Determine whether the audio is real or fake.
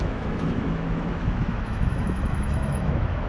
fake